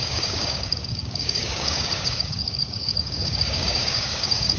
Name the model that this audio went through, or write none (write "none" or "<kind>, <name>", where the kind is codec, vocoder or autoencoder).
codec, DAC